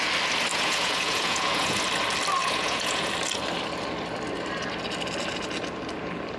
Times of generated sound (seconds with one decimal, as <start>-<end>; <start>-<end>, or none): 0.5-1.8; 2.4-3.1